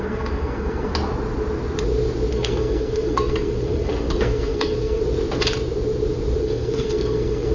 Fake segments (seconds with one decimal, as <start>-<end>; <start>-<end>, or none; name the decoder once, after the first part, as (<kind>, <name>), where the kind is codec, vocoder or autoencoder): 0.0-0.9 (codec, SNAC); 2.3-5.0; 6.4-7.5